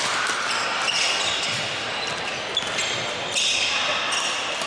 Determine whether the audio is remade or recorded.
recorded